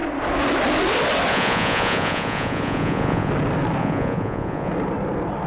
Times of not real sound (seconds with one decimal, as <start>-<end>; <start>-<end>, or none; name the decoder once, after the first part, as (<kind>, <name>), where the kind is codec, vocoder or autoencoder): 1.3-3.3 (vocoder, Vocos); 3.8-4.7